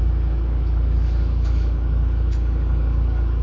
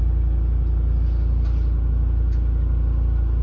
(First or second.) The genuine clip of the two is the second